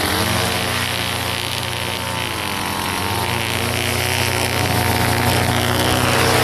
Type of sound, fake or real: real